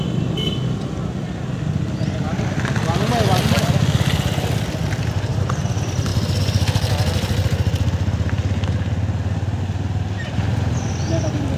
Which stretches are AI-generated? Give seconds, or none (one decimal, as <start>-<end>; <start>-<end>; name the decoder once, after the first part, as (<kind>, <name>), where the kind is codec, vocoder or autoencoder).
none